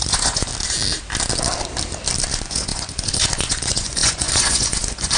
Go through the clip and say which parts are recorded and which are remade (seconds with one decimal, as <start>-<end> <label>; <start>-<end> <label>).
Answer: 0.0-0.5 remade; 0.5-2.3 recorded; 2.3-5.2 remade